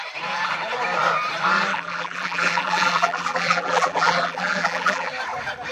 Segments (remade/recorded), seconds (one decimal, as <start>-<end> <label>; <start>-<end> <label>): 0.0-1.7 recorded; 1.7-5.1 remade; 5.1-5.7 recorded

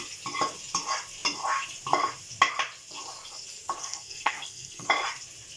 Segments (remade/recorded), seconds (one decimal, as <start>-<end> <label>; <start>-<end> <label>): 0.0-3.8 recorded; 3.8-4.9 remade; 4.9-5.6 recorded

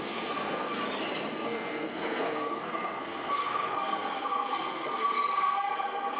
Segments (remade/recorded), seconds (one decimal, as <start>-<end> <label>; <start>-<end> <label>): 0.0-0.8 remade; 0.8-1.3 recorded; 1.3-6.2 remade